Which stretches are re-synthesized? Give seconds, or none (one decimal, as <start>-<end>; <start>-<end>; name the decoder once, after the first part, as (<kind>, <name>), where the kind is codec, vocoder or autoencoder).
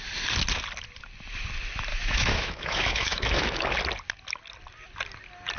1.9-3.7 (autoencoder, DAC-VAE)